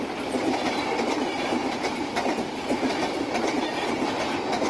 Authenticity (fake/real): real